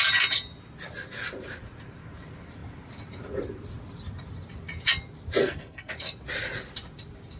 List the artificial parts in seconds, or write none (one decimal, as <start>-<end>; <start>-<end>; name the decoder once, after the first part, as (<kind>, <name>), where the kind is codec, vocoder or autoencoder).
5.4-5.9 (codec, SNAC)